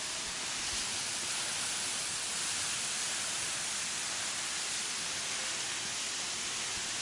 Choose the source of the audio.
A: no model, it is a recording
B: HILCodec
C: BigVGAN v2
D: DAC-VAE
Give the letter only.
A